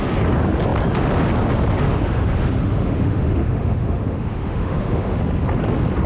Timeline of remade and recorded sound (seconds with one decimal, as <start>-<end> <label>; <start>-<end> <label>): 0.0-1.7 recorded; 1.7-5.2 remade; 5.2-6.1 recorded